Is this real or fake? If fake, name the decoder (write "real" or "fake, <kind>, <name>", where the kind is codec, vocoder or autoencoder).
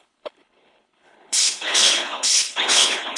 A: fake, codec, HILCodec